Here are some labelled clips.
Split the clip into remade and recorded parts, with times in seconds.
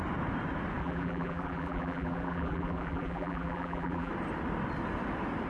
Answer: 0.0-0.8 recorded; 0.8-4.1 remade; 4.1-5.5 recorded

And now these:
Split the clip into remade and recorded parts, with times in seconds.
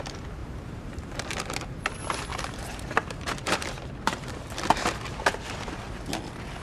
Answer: 0.0-0.4 recorded; 0.4-1.3 remade; 1.3-2.3 recorded; 2.3-4.4 remade; 4.4-6.6 recorded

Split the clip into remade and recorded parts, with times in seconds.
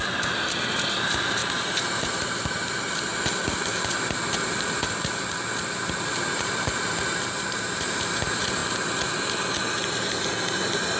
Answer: 0.0-3.1 remade; 3.1-5.7 recorded; 5.7-8.6 remade; 8.6-11.0 recorded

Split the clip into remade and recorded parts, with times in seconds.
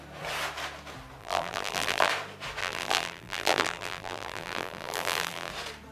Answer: 0.0-1.2 recorded; 1.2-2.1 remade; 2.1-2.6 recorded; 2.6-5.5 remade; 5.5-5.9 recorded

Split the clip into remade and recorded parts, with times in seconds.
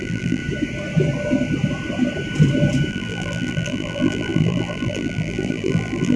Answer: 0.0-0.4 remade; 0.4-2.9 recorded; 2.9-6.2 remade